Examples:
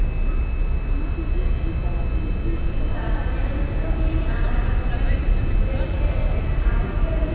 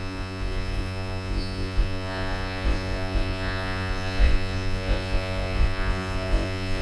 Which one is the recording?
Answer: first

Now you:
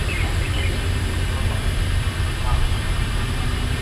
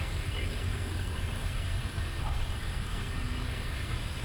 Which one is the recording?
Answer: first